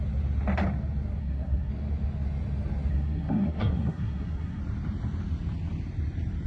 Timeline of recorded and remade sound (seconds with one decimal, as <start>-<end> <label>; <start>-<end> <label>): 0.0-1.2 recorded; 1.2-1.7 remade; 1.7-2.9 recorded; 2.9-4.6 remade; 4.6-6.5 recorded